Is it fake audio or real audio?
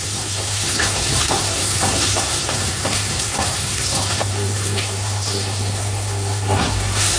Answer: fake